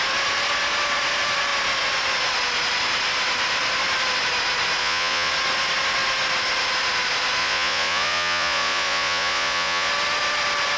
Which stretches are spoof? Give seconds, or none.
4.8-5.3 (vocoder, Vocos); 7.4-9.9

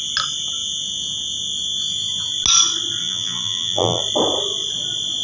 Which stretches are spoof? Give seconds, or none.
3.0-4.0 (vocoder, BigVGAN v2)